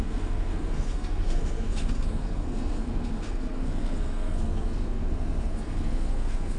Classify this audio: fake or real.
fake